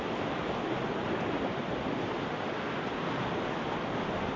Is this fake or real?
real